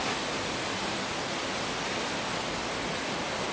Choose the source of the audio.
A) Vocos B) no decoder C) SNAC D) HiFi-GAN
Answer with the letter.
B